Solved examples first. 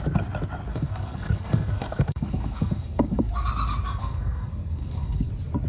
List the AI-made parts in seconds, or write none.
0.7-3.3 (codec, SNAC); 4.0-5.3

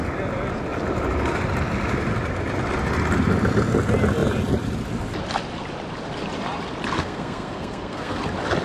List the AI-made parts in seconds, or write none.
7.0-8.2 (codec, SNAC)